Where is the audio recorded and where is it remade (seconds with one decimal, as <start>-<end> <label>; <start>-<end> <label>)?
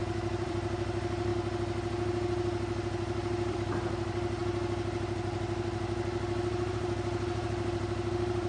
0.0-1.3 remade; 1.3-3.5 recorded; 3.5-4.4 remade; 4.4-6.7 recorded; 6.7-8.5 remade